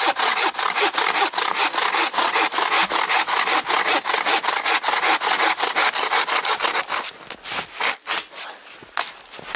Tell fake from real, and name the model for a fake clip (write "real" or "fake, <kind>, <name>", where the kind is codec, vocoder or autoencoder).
real